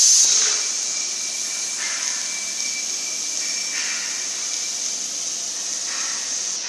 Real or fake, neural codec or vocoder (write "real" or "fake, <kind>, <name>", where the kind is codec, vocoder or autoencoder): real